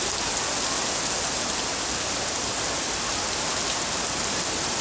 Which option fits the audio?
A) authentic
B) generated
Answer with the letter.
A